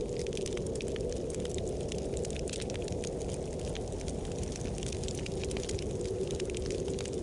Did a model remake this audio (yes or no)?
no